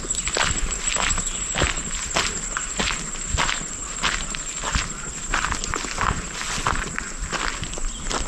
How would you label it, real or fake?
real